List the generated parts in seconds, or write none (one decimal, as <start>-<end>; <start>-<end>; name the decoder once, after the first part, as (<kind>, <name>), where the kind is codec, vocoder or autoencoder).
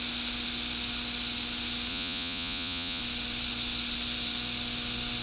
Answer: 1.9-3.0 (vocoder, Vocos)